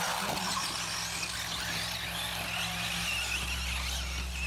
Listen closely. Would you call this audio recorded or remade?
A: recorded